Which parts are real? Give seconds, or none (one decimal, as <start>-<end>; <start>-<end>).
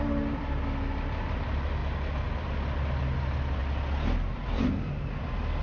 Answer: 1.8-2.4; 3.6-4.3